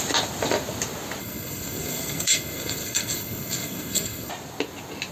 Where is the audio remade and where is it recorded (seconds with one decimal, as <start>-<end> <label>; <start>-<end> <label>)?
0.0-1.2 recorded; 1.2-4.3 remade; 4.3-5.1 recorded